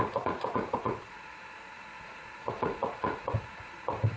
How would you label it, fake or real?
fake